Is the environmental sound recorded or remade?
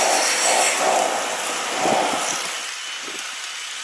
recorded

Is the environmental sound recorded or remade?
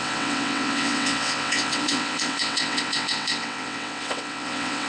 remade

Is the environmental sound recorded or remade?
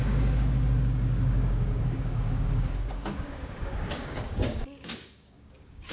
remade